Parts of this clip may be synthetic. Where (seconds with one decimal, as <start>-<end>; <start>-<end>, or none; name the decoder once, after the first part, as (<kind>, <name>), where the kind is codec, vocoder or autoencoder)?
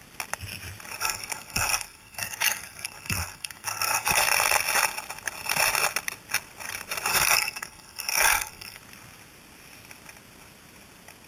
1.0-4.2 (codec, SNAC); 7.1-8.8